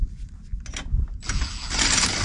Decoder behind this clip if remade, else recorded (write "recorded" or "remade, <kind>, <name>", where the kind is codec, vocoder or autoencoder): recorded